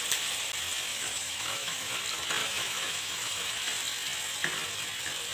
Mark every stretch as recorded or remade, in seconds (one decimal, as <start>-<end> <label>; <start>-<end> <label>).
0.0-0.9 recorded; 0.9-1.9 remade; 1.9-2.4 recorded; 2.4-3.6 remade; 3.6-5.3 recorded